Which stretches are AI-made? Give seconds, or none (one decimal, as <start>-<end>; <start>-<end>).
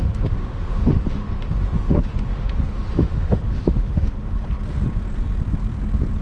0.0-4.3